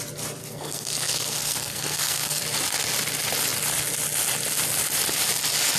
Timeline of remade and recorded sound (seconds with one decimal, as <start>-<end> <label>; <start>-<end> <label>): 0.0-0.4 recorded; 0.4-2.4 remade; 2.4-5.8 recorded